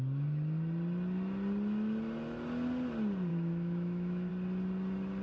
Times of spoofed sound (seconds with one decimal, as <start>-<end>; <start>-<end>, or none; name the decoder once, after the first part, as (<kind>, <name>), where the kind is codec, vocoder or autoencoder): 3.3-4.3 (autoencoder, DAC-VAE)